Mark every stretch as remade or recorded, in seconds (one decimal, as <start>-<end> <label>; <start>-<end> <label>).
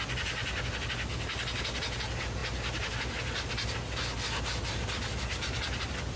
0.0-6.2 recorded